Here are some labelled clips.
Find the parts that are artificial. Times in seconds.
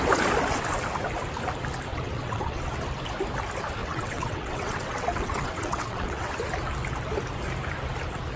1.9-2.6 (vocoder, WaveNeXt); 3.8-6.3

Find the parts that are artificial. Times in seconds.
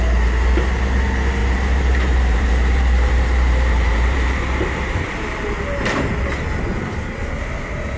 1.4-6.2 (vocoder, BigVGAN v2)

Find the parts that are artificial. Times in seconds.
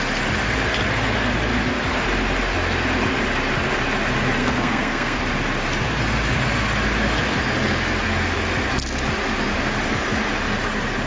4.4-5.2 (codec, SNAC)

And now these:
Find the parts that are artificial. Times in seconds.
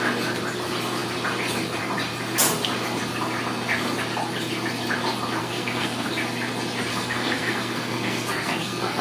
5.4-6.1 (codec, SNAC); 6.9-9.0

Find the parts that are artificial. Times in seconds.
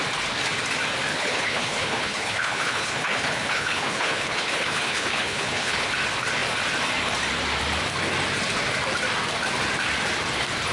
1.1-5.9 (codec, HILCodec)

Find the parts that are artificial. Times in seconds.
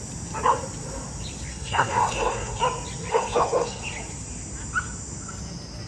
1.5-2.6 (codec, SNAC); 3.1-3.8